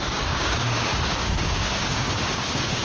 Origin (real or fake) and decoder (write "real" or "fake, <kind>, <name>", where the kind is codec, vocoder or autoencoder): fake, codec, DAC